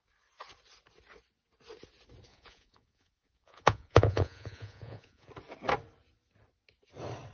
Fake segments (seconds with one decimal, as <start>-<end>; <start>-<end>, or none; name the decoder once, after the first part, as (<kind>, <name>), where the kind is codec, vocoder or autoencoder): 2.3-5.3 (vocoder, Vocos)